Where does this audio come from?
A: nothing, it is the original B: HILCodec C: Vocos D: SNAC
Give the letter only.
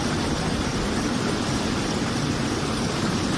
A